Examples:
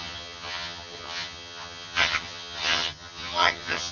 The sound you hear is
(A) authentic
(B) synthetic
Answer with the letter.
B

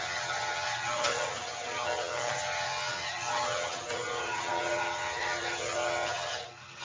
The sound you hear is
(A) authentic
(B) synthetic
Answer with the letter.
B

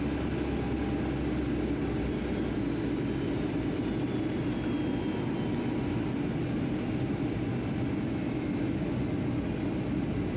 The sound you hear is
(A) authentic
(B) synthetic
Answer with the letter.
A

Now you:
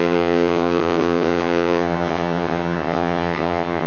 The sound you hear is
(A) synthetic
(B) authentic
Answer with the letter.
A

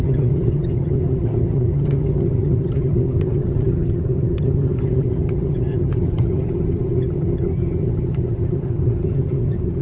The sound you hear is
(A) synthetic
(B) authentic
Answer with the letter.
A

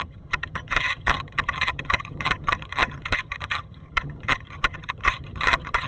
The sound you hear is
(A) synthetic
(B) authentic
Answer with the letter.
A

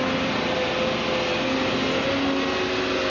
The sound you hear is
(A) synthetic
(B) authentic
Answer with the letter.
B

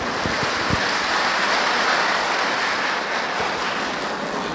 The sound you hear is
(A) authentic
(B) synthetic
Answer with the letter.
A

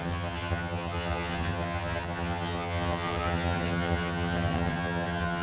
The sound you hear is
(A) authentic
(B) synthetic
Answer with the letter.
B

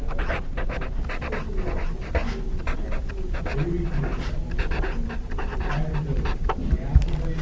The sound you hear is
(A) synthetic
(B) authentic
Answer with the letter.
B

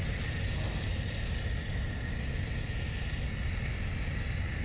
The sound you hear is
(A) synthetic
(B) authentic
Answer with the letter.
B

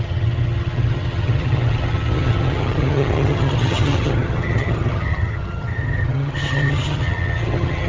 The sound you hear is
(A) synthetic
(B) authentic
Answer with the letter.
A